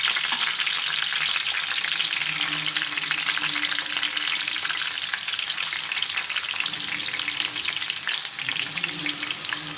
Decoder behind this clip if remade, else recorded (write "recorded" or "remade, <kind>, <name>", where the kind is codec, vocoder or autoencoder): recorded